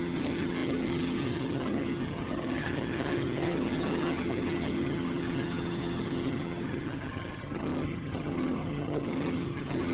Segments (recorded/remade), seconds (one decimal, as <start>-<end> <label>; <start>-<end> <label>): 0.0-9.9 remade